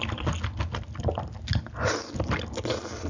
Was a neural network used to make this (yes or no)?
no